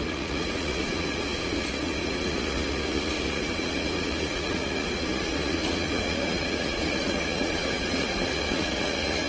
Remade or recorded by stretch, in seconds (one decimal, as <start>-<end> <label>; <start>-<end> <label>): 0.0-9.3 remade